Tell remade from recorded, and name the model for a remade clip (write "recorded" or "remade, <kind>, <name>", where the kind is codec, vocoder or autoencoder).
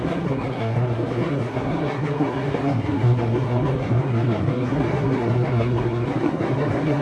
remade, codec, SNAC